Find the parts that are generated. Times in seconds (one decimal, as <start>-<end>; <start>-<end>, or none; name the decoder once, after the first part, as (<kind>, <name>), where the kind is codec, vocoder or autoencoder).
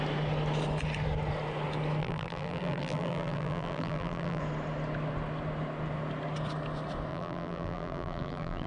2.0-4.4 (vocoder, BigVGAN v2); 7.1-8.7